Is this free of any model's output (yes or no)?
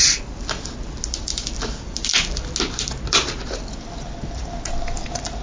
yes